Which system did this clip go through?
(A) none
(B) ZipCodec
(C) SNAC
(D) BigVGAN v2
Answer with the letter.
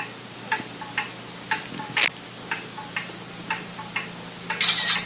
A